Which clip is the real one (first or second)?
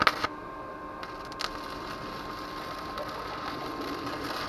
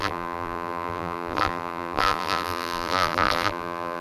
first